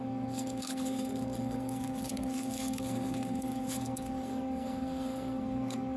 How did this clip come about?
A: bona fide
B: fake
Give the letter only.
B